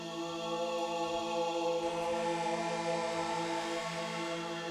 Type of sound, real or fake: real